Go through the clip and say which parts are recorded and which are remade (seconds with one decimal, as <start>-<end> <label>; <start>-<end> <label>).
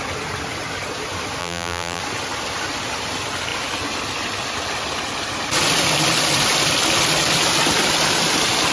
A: 0.0-1.4 recorded; 1.4-2.0 remade; 2.0-8.7 recorded